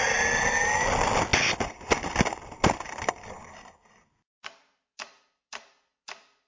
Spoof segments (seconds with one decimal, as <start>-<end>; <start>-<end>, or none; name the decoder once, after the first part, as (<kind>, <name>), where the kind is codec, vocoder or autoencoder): none